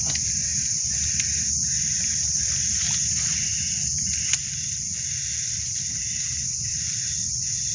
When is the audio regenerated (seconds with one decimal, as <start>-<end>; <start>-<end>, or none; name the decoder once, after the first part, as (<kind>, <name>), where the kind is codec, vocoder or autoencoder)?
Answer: 0.5-1.5 (vocoder, BigVGAN v2); 3.5-7.7